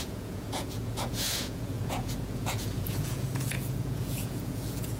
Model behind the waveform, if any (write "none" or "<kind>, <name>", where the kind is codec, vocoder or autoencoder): vocoder, Vocos